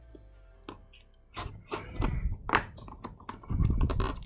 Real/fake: real